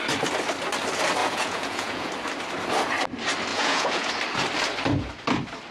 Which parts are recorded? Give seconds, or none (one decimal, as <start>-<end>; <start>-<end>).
0.0-1.2; 2.1-3.5; 4.1-5.7